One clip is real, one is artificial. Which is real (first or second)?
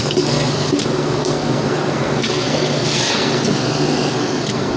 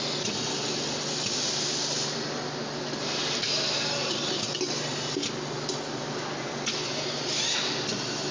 second